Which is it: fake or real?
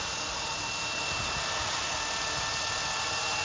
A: real